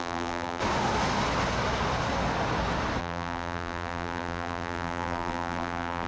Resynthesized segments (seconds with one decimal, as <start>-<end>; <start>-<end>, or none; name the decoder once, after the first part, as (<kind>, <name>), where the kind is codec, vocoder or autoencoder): 0.0-0.6 (vocoder, BigVGAN v2); 3.0-6.1